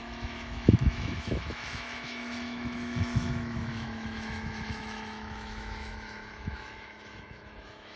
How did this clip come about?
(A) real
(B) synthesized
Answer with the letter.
B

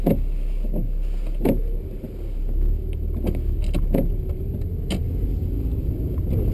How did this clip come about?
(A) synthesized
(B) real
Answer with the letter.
B